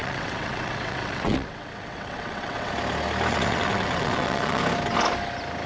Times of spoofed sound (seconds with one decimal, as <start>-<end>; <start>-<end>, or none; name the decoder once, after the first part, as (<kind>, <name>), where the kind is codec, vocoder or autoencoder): 0.0-2.7 (vocoder, WaveNeXt); 3.3-4.6